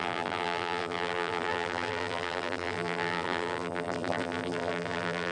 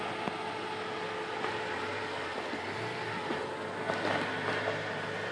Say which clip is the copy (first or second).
first